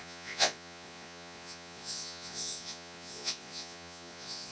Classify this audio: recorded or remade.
remade